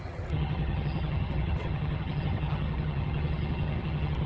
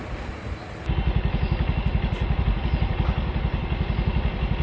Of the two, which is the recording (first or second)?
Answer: second